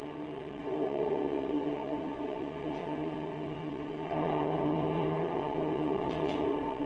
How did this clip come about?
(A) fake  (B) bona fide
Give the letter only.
A